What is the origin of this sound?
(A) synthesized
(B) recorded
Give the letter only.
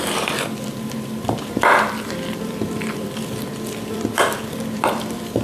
A